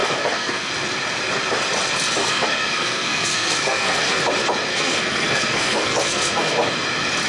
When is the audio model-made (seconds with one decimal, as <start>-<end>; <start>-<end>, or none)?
0.0-0.7; 2.2-4.2; 4.7-6.7